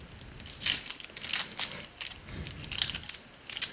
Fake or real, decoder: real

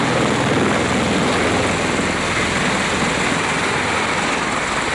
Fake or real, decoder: real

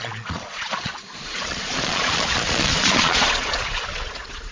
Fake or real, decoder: fake, vocoder, Vocos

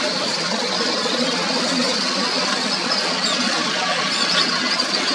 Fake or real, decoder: fake, vocoder, Vocos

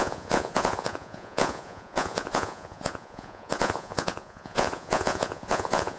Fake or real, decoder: fake, vocoder, Vocos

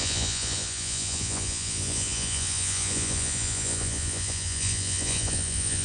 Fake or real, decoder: fake, vocoder, Vocos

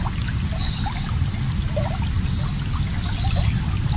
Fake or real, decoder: real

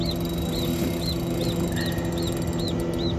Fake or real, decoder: real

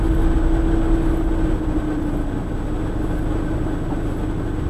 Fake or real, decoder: real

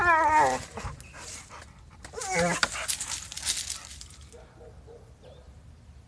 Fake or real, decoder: real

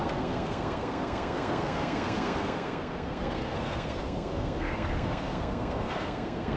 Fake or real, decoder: fake, codec, SNAC